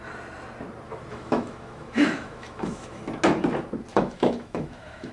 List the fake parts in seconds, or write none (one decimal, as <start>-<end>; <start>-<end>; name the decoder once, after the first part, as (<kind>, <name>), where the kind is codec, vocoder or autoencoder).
1.1-3.0 (autoencoder, DAC-VAE); 3.9-5.1